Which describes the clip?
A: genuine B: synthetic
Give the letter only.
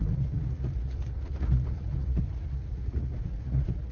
B